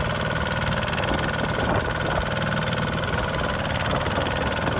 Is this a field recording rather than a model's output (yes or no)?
yes